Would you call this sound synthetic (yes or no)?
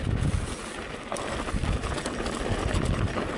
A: no